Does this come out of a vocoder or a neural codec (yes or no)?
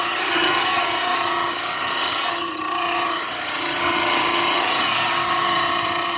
yes